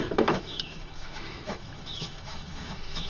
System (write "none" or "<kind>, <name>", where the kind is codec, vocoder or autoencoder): autoencoder, DAC-VAE